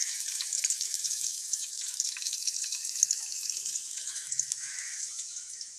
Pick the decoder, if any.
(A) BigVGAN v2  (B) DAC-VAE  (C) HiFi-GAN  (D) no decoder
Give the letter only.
B